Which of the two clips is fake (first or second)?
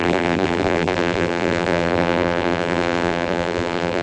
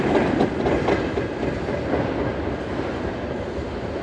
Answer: first